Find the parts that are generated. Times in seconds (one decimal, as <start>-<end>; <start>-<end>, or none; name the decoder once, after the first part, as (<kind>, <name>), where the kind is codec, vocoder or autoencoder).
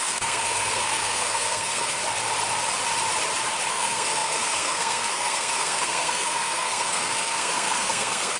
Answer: 0.0-2.0 (codec, SNAC); 3.7-8.4